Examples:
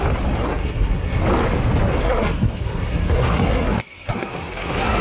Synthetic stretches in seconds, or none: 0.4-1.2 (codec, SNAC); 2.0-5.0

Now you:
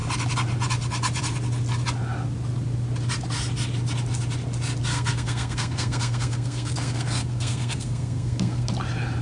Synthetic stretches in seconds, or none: 4.9-8.7 (codec, SNAC)

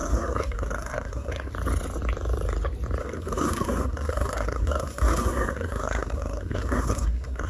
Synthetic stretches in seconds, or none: 0.0-1.5 (codec, SNAC); 3.0-7.5

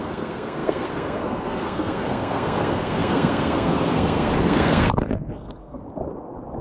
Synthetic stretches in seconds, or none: 0.0-5.8 (codec, SNAC)

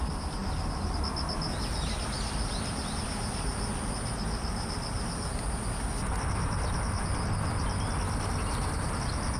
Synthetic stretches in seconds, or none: none

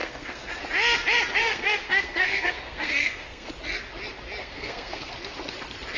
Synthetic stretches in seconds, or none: 0.0-0.5 (codec, SNAC); 1.4-3.5; 4.4-5.1